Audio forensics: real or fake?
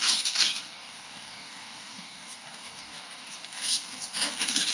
fake